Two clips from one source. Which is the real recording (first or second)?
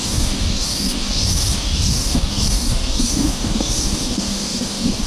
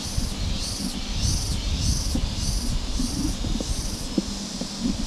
second